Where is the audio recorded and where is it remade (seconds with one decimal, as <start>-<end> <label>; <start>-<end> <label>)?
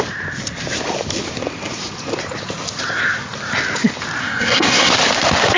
0.0-4.2 recorded; 4.2-4.9 remade; 4.9-5.6 recorded